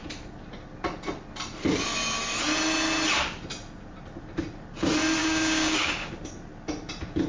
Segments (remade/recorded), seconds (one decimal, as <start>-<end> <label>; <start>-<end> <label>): 0.0-5.2 recorded; 5.2-6.1 remade; 6.1-7.3 recorded